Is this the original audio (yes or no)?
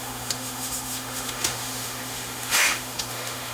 no